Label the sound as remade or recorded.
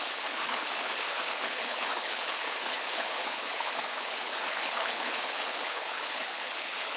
remade